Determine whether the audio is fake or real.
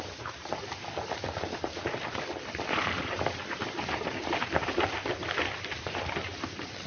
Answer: fake